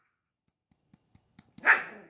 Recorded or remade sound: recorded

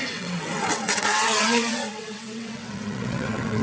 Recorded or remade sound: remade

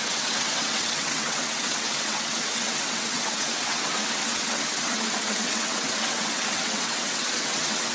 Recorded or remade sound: remade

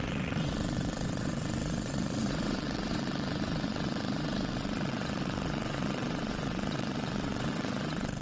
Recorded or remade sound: remade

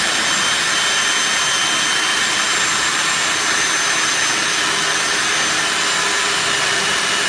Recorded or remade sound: recorded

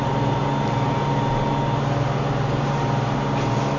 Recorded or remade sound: recorded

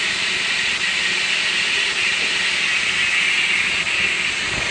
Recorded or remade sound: recorded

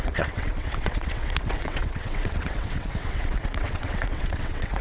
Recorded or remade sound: remade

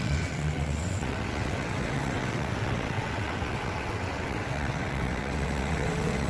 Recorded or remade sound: remade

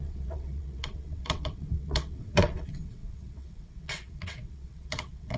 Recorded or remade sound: remade